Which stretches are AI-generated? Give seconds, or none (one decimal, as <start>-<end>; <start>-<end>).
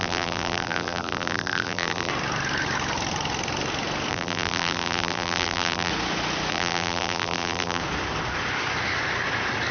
0.0-2.1; 4.1-5.9; 6.5-7.8